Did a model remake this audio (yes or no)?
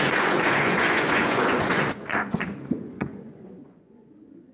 yes